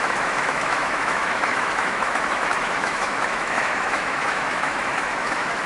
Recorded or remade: remade